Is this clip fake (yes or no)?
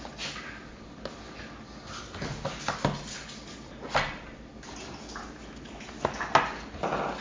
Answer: no